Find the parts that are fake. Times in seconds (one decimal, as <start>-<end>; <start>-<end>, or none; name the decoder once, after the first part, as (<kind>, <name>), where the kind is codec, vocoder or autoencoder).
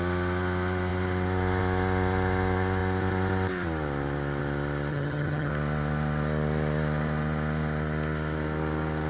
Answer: 4.9-5.5 (vocoder, HiFi-GAN)